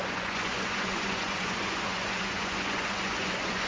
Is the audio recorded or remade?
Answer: remade